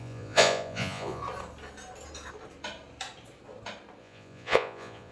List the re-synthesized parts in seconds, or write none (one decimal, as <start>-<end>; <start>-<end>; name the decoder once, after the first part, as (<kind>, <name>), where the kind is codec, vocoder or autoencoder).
0.0-1.2 (vocoder, Vocos); 4.0-5.1